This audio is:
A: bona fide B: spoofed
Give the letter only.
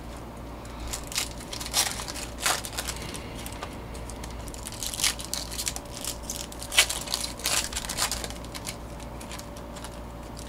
A